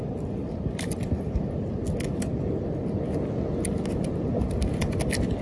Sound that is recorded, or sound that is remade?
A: recorded